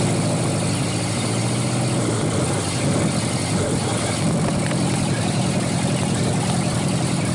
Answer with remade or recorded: recorded